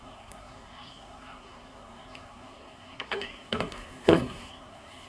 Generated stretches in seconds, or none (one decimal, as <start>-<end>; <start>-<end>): 0.0-5.1